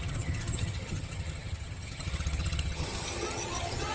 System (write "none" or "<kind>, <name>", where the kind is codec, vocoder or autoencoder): vocoder, HiFi-GAN